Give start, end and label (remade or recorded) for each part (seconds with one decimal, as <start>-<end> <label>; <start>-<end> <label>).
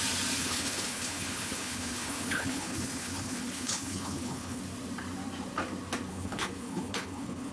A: 0.0-0.4 recorded; 0.4-4.6 remade; 4.6-6.1 recorded; 6.1-7.5 remade